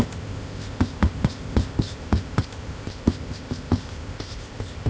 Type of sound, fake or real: fake